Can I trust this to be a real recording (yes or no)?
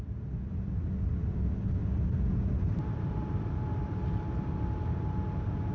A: yes